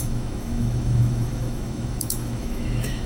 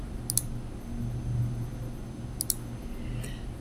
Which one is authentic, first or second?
second